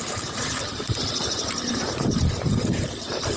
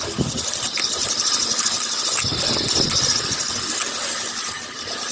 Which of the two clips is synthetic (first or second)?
first